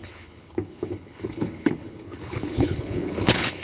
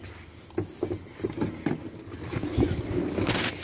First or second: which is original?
second